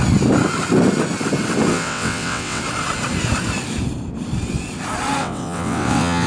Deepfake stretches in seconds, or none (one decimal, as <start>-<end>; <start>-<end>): 1.7-2.6; 5.2-6.3